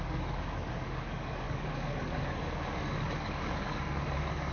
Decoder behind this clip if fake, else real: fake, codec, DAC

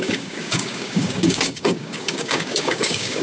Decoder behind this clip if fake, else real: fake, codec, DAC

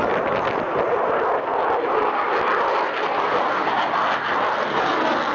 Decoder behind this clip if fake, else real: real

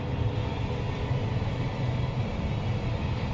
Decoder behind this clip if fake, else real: real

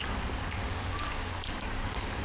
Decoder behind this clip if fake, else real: fake, codec, DAC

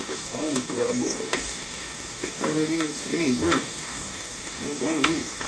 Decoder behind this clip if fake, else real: fake, codec, DAC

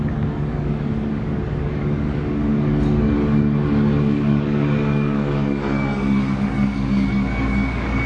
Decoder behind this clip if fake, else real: fake, codec, DAC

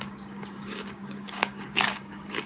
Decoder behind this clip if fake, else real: fake, codec, DAC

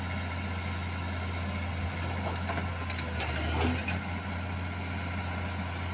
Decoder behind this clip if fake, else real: real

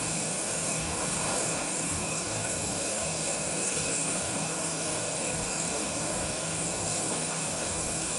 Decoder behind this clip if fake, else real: fake, codec, DAC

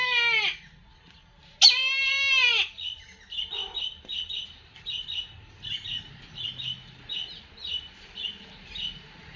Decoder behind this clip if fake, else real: real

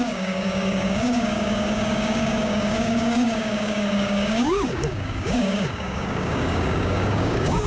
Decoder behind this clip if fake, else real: fake, codec, DAC